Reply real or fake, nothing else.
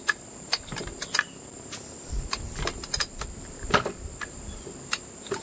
real